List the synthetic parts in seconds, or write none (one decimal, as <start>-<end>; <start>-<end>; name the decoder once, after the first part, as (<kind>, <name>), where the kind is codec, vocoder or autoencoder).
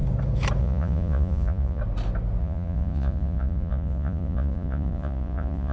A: 0.6-1.8 (vocoder, Vocos); 2.4-5.7